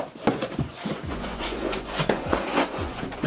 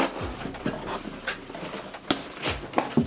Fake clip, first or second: first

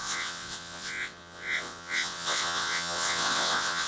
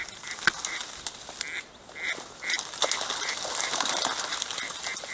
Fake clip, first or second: first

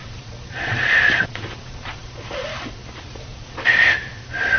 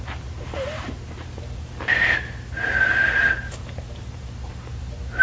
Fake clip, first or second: first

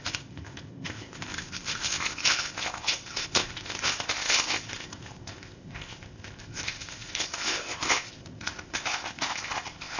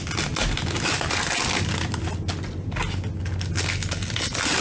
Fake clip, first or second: first